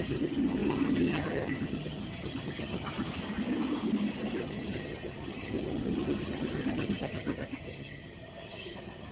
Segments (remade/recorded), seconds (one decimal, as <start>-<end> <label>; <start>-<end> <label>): 0.0-3.1 remade; 3.1-4.4 recorded; 4.4-9.1 remade